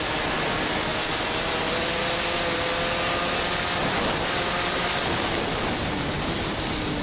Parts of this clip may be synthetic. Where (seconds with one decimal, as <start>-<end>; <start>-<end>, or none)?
none